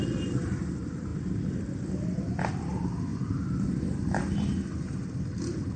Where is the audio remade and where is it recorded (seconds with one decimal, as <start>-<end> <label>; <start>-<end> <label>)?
0.0-5.8 recorded